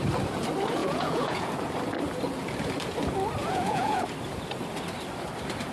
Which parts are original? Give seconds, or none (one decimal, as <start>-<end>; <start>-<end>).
0.0-0.8; 1.5-3.4; 4.0-5.7

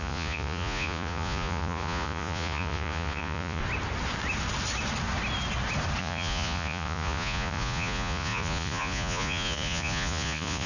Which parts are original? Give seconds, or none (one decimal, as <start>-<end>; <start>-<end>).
3.6-6.0